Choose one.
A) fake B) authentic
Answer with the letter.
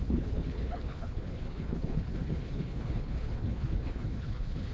A